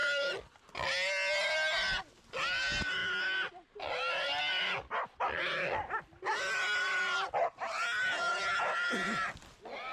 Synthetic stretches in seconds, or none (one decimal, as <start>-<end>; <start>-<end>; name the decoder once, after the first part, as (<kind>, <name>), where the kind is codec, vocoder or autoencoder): none